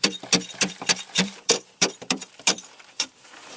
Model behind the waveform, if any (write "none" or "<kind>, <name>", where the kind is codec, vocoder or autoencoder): vocoder, BigVGAN v2